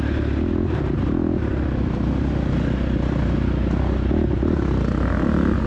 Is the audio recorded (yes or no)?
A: yes